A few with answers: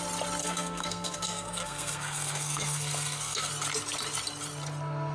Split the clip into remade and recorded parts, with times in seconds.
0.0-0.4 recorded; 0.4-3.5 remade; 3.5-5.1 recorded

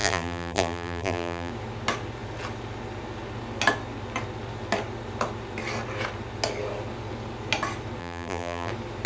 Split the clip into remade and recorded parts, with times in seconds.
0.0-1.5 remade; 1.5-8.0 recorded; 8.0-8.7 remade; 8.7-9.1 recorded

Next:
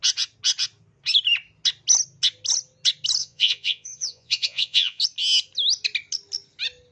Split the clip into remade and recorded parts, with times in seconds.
0.0-3.2 recorded; 3.2-5.0 remade; 5.0-6.9 recorded

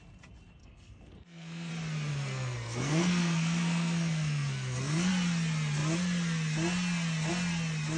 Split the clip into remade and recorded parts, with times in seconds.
0.0-0.6 recorded; 0.6-1.7 remade; 1.7-2.1 recorded; 2.1-5.1 remade; 5.1-8.0 recorded